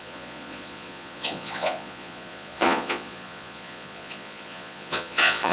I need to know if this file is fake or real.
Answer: fake